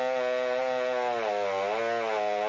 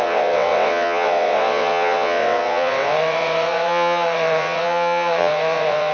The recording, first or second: first